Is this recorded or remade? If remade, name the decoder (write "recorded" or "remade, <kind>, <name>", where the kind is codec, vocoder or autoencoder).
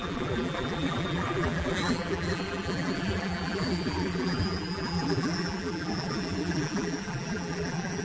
remade, vocoder, BigVGAN v2